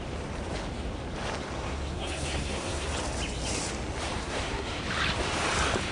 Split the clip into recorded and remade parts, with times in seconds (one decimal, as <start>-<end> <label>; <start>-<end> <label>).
0.0-1.6 recorded; 1.6-2.9 remade; 2.9-4.2 recorded; 4.2-4.8 remade; 4.8-5.9 recorded